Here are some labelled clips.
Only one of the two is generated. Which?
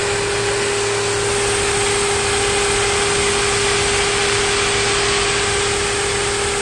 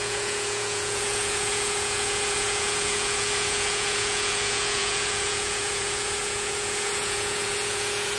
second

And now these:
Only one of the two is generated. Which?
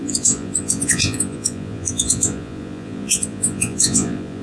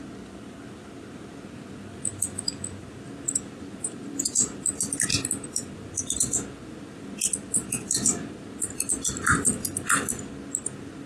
first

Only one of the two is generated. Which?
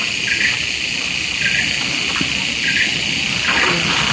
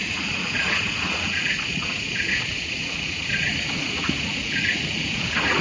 second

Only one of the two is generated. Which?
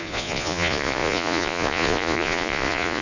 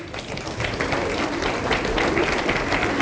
first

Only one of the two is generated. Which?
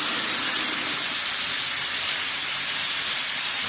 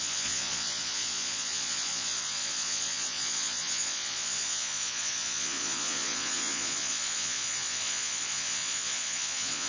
second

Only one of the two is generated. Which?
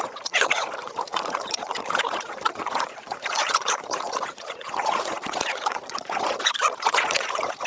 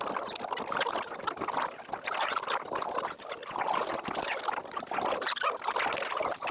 first